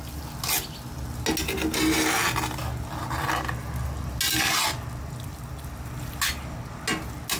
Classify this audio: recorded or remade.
recorded